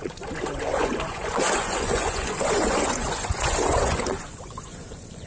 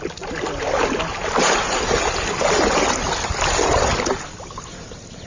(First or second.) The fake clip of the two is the first